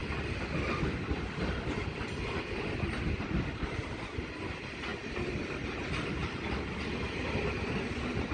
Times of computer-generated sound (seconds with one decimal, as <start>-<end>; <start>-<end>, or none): none